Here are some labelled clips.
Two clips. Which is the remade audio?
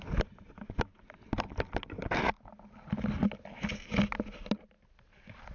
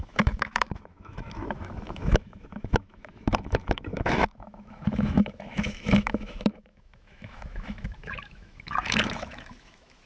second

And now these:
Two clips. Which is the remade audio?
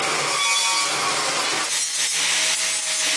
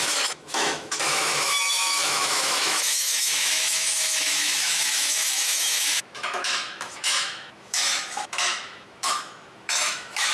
second